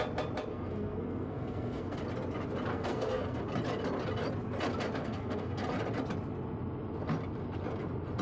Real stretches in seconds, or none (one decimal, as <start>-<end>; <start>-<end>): 0.0-0.5; 2.0-2.7; 3.4-5.0; 5.6-8.2